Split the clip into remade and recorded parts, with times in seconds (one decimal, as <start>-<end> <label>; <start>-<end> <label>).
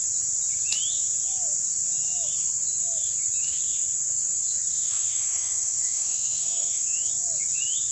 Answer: 0.0-4.7 recorded; 4.7-7.1 remade; 7.1-7.9 recorded